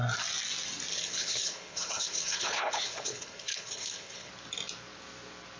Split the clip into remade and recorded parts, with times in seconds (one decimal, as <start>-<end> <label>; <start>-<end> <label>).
0.0-0.9 recorded; 0.9-4.3 remade; 4.3-5.6 recorded